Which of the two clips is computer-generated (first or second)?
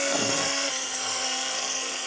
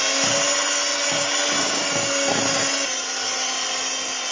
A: first